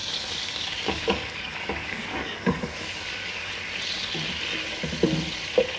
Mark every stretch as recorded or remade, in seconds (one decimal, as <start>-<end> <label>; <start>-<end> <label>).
0.0-3.5 remade; 3.5-5.8 recorded